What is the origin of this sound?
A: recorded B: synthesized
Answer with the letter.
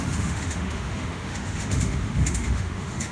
B